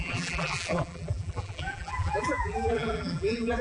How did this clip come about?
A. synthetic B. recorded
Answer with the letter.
A